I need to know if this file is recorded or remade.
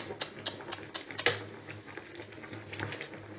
recorded